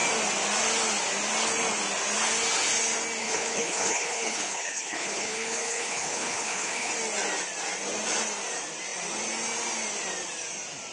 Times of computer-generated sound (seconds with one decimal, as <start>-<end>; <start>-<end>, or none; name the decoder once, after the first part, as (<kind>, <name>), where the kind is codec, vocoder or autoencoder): 3.2-6.9 (codec, HILCodec)